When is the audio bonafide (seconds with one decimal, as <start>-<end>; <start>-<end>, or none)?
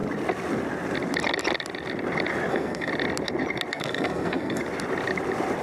0.0-2.5; 2.9-3.7; 4.6-5.6